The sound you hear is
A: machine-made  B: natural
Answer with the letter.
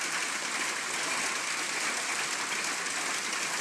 B